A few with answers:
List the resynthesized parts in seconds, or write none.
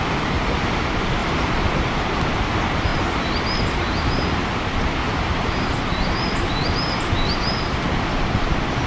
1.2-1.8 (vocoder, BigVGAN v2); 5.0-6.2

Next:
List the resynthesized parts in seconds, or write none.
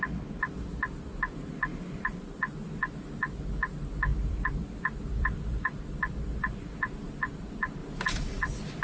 4.1-6.0 (vocoder, BigVGAN v2)